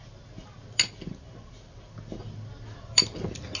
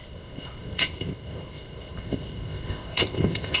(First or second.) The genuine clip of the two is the first